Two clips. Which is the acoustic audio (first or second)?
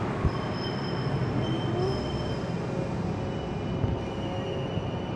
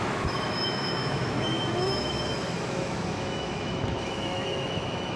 first